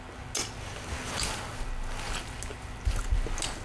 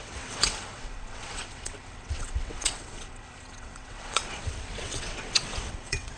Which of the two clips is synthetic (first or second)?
second